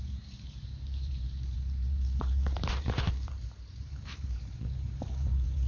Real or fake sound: fake